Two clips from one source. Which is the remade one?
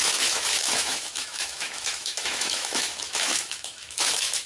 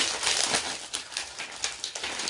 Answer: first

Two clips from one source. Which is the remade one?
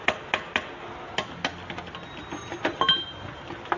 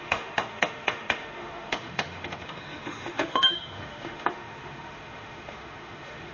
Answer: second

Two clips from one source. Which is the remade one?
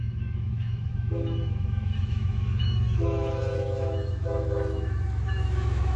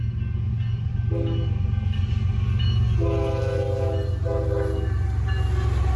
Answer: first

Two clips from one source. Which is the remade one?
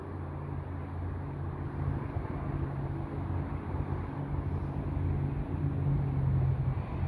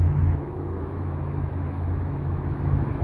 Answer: second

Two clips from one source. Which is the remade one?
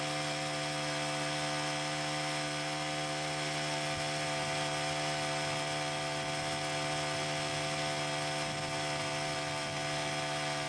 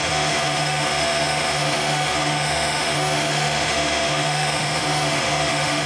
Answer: second